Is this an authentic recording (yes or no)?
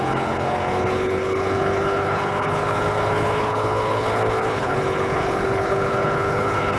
no